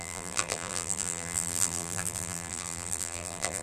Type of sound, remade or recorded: remade